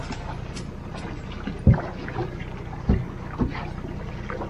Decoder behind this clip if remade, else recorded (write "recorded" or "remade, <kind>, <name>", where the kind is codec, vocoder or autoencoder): recorded